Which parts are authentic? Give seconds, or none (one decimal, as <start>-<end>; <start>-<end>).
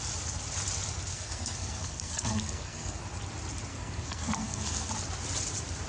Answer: 0.0-1.1; 3.0-3.7; 4.9-5.9